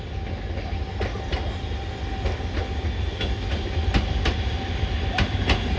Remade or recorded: recorded